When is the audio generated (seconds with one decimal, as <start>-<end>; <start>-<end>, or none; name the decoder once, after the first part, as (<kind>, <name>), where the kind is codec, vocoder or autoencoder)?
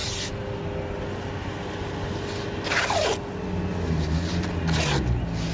none